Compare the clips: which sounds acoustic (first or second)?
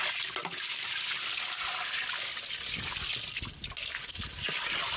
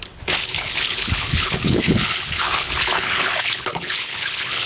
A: first